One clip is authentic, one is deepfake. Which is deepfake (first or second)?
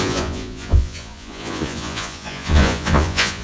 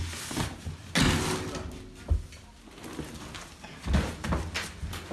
first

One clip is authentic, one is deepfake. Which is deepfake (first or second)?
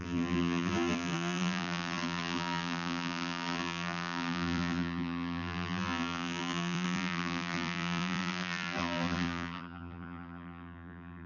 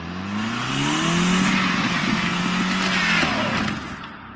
first